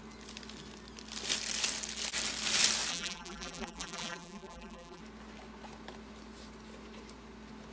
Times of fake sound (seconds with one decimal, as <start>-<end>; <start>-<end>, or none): 2.9-5.0